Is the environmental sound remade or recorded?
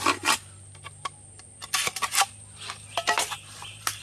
recorded